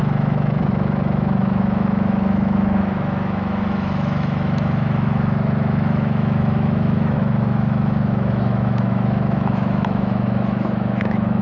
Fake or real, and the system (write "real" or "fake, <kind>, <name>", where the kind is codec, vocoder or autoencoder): fake, autoencoder, DAC-VAE